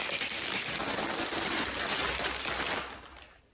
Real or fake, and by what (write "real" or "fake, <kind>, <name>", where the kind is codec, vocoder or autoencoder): real